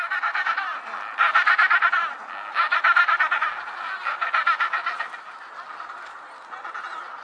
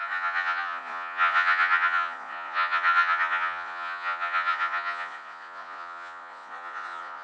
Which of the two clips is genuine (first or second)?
first